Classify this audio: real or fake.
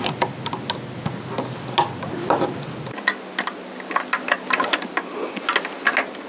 real